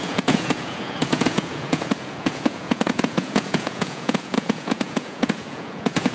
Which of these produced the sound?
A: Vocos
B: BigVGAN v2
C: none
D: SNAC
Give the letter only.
A